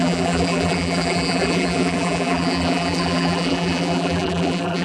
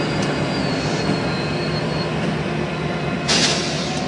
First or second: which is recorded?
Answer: second